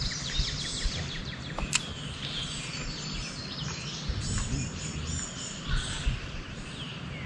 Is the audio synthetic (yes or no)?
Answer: no